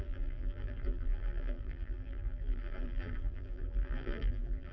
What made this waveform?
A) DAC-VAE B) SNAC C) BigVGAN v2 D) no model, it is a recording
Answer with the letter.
C